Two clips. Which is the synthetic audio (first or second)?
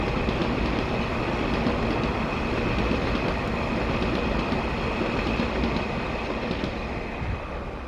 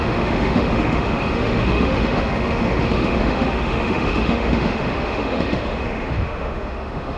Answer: second